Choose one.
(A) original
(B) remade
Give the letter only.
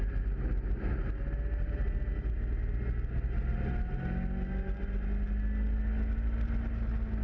A